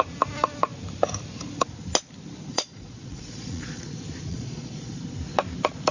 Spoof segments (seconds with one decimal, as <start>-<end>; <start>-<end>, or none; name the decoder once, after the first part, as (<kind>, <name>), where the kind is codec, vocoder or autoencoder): 2.5-3.9 (vocoder, Vocos); 4.3-5.0